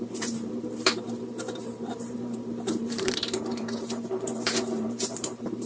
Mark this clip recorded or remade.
remade